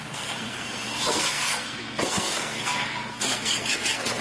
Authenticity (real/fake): fake